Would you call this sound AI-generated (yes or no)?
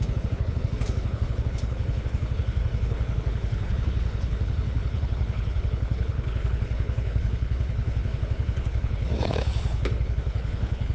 yes